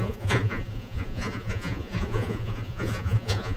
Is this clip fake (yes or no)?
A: yes